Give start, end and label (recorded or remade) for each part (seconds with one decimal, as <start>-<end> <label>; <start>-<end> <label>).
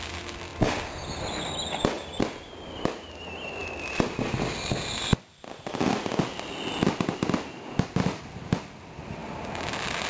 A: 0.0-10.1 recorded